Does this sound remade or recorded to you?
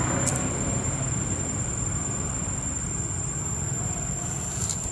remade